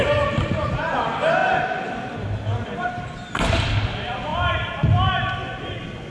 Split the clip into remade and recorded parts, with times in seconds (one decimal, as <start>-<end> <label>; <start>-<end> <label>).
0.0-6.1 recorded